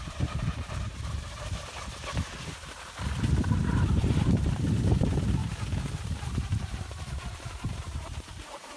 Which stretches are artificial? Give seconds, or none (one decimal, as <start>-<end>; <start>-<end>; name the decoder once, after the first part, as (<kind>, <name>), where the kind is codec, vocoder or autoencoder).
0.0-1.7 (vocoder, BigVGAN v2); 3.6-5.4; 6.4-8.8